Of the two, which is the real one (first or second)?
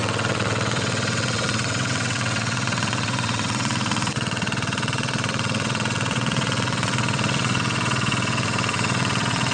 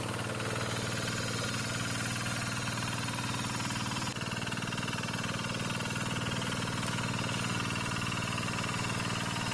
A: second